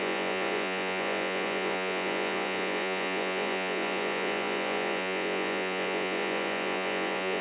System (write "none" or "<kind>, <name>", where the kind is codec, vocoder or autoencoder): vocoder, Vocos